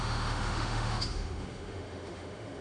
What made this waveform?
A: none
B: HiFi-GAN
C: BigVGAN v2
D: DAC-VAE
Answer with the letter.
D